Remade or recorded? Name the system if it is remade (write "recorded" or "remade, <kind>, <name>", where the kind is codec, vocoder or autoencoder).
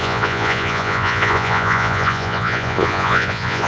remade, vocoder, Vocos